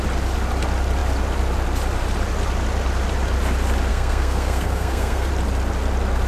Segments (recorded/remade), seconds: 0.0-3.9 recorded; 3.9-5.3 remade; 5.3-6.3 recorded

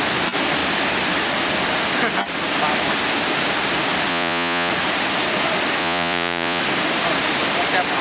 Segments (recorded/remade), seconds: 0.0-4.1 recorded; 4.1-4.7 remade; 4.7-5.8 recorded; 5.8-6.6 remade; 6.6-8.0 recorded

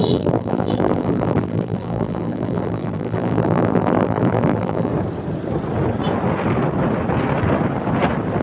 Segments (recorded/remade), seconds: 0.0-4.9 remade; 4.9-8.4 recorded

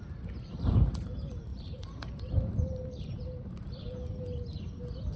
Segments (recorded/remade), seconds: 0.0-1.5 recorded; 1.5-4.6 remade; 4.6-5.2 recorded

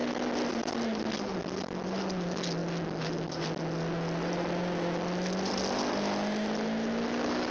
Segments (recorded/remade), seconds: 0.0-7.5 recorded